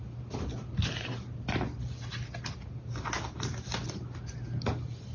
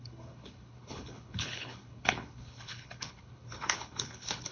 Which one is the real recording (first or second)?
first